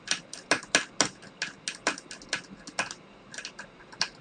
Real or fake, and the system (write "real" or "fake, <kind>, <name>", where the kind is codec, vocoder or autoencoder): real